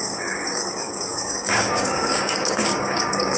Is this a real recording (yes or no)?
no